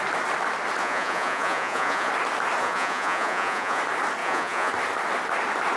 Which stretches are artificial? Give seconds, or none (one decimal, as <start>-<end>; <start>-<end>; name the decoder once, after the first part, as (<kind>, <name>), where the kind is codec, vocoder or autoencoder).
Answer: 0.8-2.1 (vocoder, Vocos); 2.6-3.8; 4.2-4.7